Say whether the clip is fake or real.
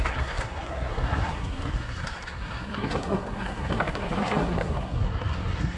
fake